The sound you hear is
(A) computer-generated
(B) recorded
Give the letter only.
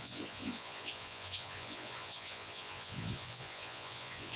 A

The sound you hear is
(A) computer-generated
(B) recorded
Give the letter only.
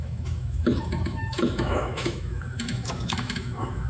A